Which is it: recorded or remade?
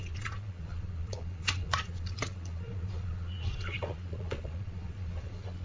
remade